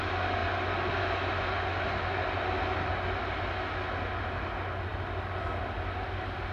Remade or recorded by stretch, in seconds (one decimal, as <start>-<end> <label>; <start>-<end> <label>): 0.0-6.5 recorded